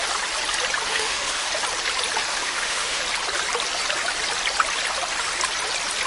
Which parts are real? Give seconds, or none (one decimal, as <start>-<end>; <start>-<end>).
0.0-0.9; 1.5-2.3; 3.0-6.1